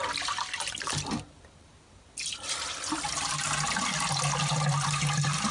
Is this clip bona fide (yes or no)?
yes